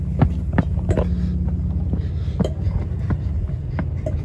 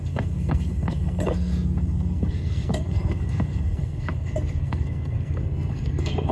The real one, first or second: first